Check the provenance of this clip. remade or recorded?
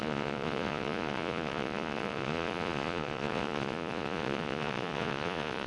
remade